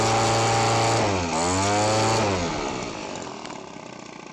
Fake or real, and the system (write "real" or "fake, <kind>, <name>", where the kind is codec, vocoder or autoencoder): real